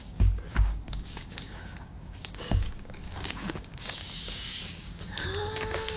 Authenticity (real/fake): fake